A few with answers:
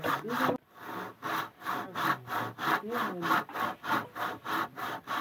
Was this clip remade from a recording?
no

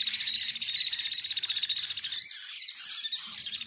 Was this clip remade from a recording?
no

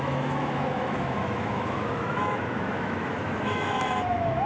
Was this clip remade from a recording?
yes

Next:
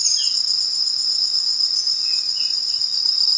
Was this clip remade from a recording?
no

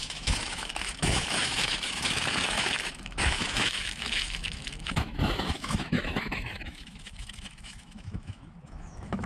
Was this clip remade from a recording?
yes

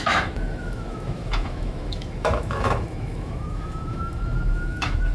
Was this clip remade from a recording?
yes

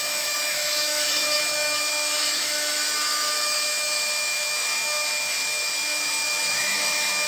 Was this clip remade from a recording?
yes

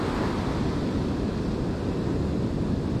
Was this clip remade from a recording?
no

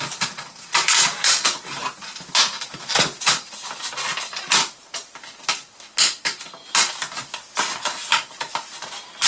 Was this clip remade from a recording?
no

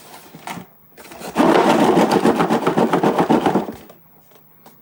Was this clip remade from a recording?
no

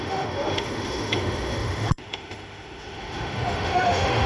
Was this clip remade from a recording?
yes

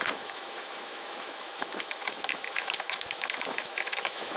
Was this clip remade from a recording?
yes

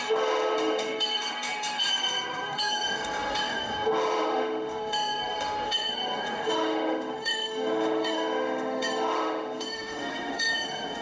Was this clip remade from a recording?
yes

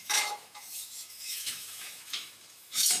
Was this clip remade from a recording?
yes